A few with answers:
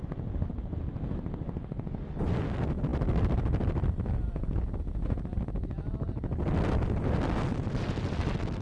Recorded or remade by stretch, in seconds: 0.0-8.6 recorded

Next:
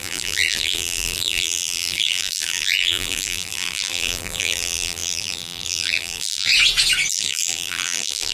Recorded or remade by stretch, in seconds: 0.0-6.5 remade; 6.5-7.1 recorded; 7.1-8.3 remade

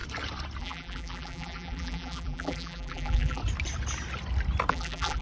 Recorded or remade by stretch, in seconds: 0.0-0.6 recorded; 0.6-3.4 remade; 3.4-4.7 recorded; 4.7-5.2 remade

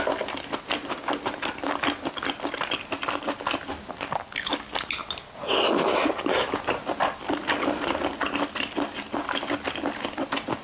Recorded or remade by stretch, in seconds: 0.0-10.6 recorded

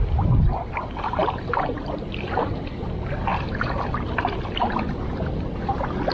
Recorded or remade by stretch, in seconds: 0.0-1.2 recorded; 1.2-1.8 remade; 1.8-3.3 recorded; 3.3-6.1 remade

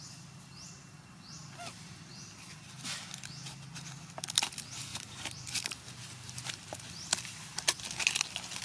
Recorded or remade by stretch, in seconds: 0.0-4.9 recorded; 4.9-6.0 remade; 6.0-8.6 recorded

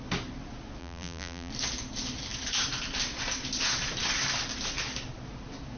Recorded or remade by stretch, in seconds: 0.0-0.8 recorded; 0.8-1.5 remade; 1.5-5.8 recorded

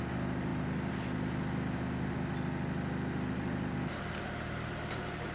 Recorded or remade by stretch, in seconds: 0.0-5.3 recorded